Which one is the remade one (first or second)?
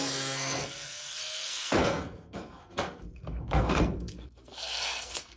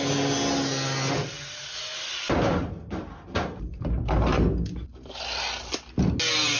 first